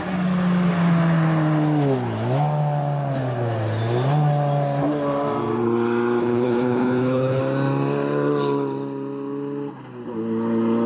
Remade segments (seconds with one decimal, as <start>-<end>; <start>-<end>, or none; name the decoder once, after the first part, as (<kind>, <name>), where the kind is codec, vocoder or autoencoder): 6.2-7.4 (codec, HILCodec)